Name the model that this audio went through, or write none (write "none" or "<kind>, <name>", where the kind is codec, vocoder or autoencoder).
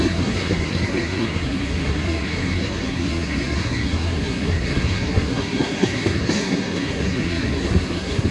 codec, SNAC